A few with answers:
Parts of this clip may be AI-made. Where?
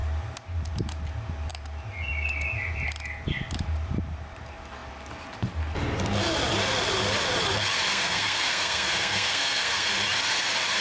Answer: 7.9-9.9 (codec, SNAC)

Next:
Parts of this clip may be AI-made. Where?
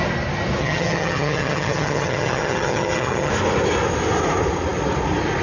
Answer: 0.6-3.3 (vocoder, HiFi-GAN)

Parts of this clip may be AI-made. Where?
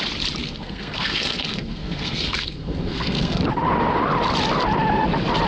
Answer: 0.4-3.4 (codec, SNAC)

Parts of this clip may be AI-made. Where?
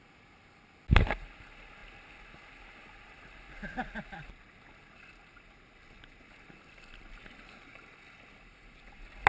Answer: none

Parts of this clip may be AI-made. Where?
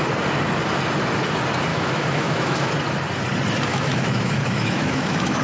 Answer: 1.7-2.7 (autoencoder, DAC-VAE); 3.7-5.4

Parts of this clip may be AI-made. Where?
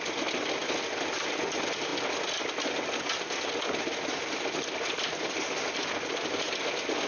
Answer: none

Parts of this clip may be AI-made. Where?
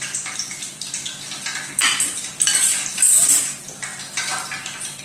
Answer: none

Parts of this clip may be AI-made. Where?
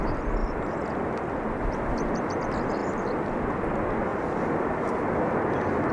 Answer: none